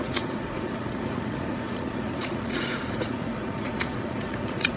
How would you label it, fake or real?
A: fake